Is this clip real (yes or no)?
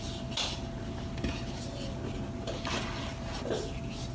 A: yes